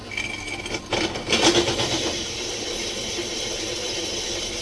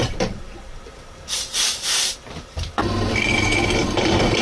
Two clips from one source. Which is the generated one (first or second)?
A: second